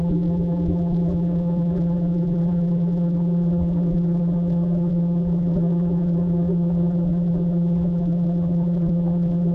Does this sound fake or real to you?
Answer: fake